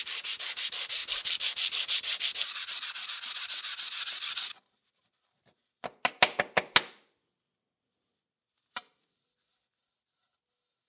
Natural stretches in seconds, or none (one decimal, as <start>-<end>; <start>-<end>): 0.0-10.9